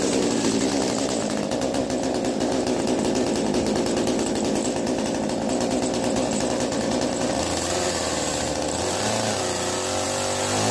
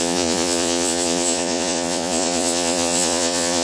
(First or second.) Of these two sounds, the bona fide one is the first